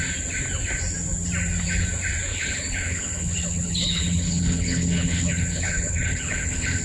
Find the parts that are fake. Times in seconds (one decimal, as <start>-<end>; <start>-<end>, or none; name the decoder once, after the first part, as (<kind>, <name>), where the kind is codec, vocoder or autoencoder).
2.3-6.8 (codec, HILCodec)